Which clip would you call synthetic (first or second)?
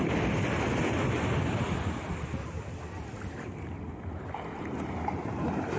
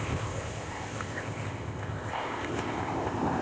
second